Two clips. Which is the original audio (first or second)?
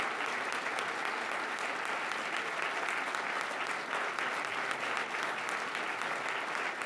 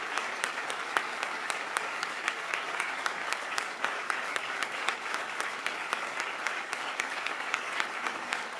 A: first